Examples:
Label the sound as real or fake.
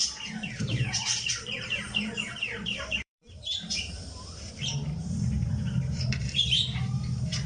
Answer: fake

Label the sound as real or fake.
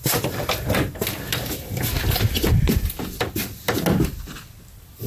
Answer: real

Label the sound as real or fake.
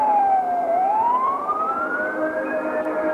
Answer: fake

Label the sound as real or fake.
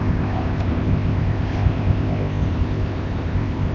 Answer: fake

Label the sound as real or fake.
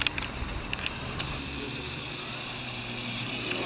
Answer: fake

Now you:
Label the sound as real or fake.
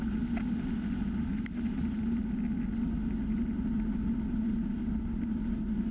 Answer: real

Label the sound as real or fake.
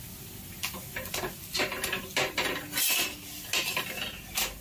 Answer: real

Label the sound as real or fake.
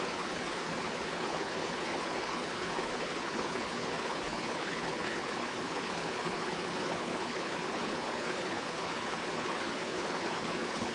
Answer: fake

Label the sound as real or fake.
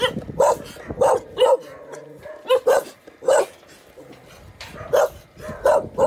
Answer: real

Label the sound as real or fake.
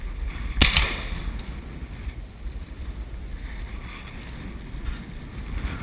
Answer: real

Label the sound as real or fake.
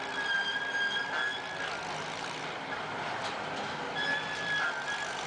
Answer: real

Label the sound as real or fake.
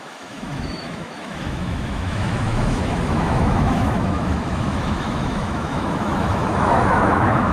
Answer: fake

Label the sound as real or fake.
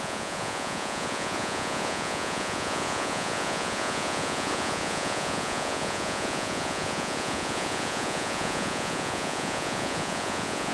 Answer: fake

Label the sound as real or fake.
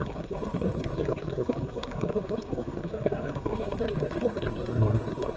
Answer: fake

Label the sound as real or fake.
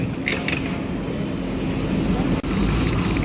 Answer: real